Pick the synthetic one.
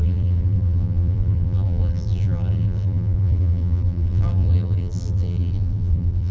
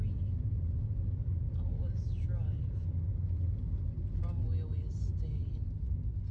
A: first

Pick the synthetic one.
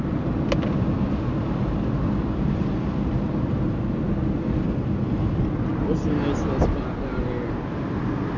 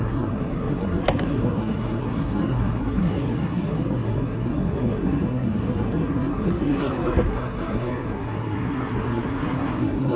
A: second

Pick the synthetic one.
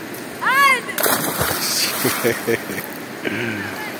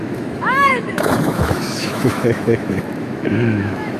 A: second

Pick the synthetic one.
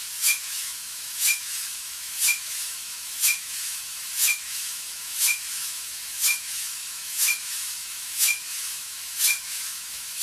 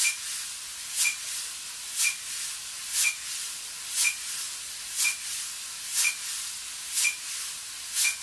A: first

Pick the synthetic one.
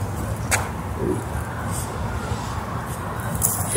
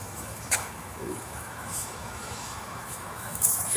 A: second